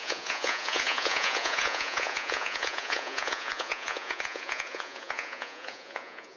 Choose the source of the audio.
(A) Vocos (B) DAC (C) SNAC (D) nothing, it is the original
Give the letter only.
A